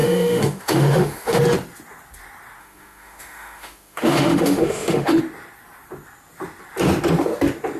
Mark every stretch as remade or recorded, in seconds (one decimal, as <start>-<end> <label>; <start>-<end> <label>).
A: 0.0-1.4 remade; 1.4-2.6 recorded; 2.6-5.2 remade; 5.2-7.8 recorded